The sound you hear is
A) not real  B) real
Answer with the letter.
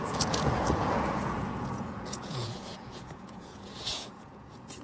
A